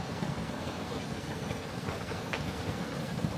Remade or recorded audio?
remade